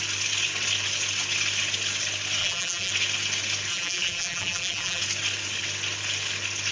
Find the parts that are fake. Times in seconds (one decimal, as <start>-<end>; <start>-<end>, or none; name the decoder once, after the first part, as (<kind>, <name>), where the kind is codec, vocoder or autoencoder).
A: 2.4-2.9 (vocoder, BigVGAN v2); 3.7-5.0